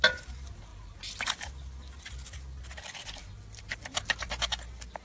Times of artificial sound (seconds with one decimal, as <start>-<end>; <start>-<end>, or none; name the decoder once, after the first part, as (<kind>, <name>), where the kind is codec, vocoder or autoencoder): none